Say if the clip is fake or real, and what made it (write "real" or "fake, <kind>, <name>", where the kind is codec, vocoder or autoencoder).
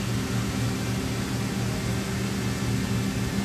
real